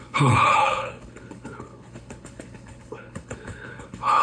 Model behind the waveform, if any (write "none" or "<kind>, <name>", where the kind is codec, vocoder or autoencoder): codec, HILCodec